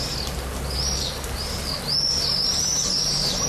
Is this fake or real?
real